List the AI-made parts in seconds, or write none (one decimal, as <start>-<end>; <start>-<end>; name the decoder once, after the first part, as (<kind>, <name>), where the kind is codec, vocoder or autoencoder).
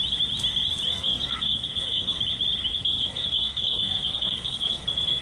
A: 0.9-2.2 (codec, SNAC); 2.7-5.2